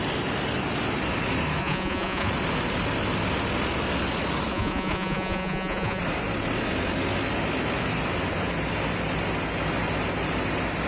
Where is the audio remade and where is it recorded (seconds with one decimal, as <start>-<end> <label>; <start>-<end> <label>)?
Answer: 0.0-1.6 recorded; 1.6-2.3 remade; 2.3-4.5 recorded; 4.5-6.0 remade; 6.0-10.9 recorded